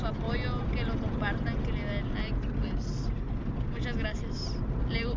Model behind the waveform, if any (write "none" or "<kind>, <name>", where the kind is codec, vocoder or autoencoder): none